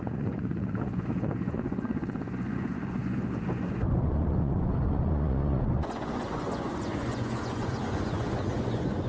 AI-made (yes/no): yes